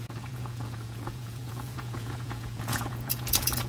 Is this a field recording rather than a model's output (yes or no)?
no